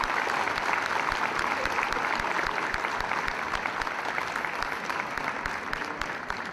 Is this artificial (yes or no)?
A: no